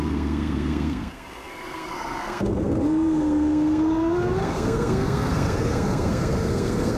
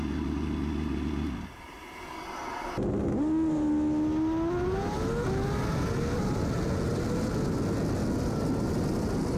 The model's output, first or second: first